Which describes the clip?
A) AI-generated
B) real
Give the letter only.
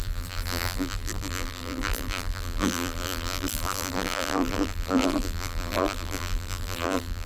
A